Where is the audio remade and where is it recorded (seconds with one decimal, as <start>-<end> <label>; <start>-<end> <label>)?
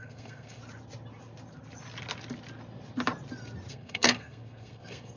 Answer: 0.0-0.6 remade; 0.6-3.7 recorded; 3.7-5.2 remade